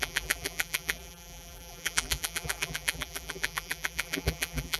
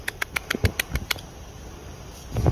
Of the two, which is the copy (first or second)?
first